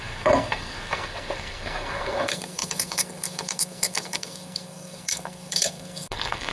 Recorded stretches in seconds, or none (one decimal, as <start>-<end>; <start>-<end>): none